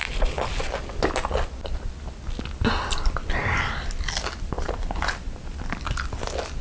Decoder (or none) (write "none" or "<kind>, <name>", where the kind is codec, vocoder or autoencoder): none